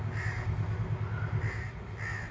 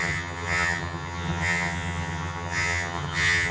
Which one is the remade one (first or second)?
second